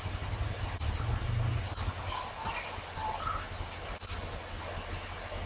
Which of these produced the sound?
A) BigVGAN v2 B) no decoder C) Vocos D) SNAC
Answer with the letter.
B